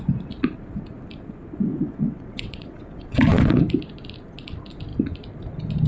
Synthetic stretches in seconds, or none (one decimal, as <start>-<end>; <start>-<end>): 1.7-3.4